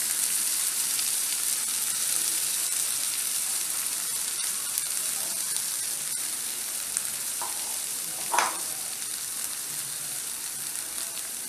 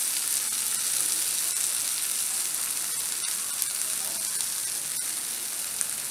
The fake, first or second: first